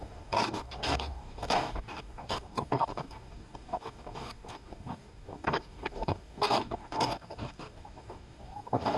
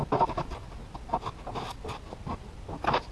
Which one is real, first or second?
second